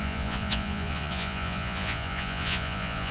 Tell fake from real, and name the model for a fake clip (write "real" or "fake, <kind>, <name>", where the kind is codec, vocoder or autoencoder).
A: fake, vocoder, Vocos